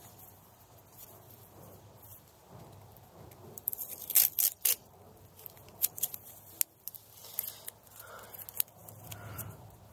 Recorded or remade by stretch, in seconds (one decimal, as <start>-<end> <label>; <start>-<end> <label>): 0.0-2.1 recorded; 2.1-6.5 remade; 6.5-9.9 recorded